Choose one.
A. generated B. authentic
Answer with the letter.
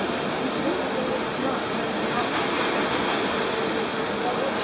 B